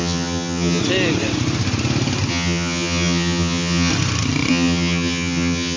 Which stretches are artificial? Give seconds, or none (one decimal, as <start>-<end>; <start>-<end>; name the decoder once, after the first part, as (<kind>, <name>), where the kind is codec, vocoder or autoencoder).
0.0-0.8 (vocoder, HiFi-GAN); 2.3-3.9; 4.5-5.8